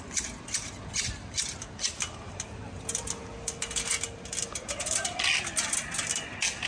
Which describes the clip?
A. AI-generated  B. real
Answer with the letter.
B